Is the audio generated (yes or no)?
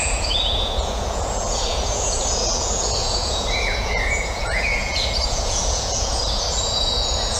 yes